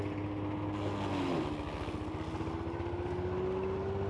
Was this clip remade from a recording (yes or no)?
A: no